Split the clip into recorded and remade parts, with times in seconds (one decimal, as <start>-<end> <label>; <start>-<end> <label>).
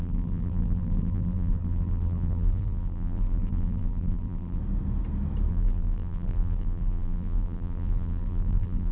0.0-4.6 remade; 4.6-5.5 recorded; 5.5-8.9 remade